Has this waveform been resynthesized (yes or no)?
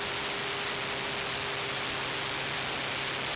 no